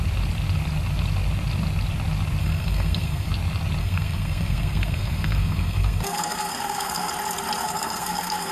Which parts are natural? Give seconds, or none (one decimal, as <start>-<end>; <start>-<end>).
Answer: 0.0-2.4; 3.3-3.8; 7.1-7.6